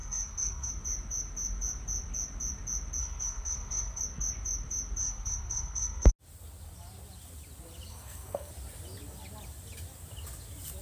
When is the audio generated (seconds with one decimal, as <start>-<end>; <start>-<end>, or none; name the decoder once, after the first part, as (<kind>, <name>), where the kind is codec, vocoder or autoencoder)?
0.0-0.7 (codec, SNAC); 3.0-4.0; 5.0-6.1; 7.9-8.5